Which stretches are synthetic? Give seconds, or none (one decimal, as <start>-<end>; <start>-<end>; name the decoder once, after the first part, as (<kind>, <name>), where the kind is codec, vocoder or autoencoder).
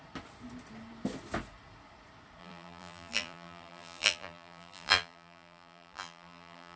2.4-6.8 (vocoder, BigVGAN v2)